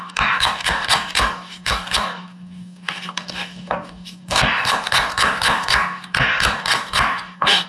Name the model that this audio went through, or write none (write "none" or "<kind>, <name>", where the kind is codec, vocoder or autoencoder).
codec, DAC